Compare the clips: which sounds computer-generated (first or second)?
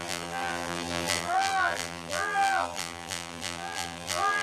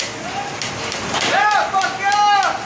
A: first